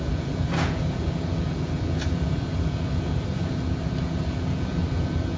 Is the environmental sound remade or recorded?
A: remade